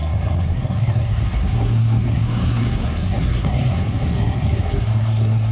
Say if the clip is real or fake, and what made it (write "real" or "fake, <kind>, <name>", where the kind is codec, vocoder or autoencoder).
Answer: fake, codec, SNAC